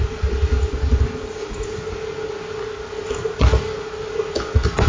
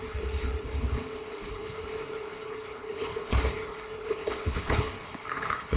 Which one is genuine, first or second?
first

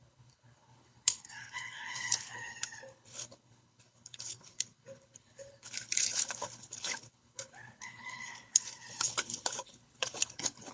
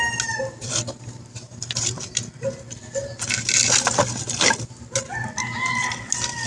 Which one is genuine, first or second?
second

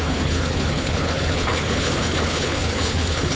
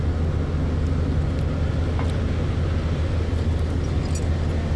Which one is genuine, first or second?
second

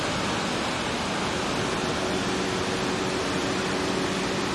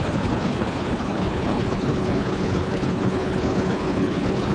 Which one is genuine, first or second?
first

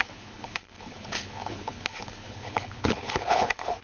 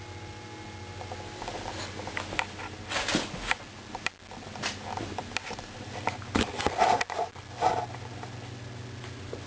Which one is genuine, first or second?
second